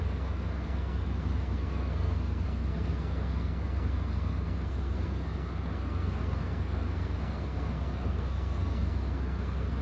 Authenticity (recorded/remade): remade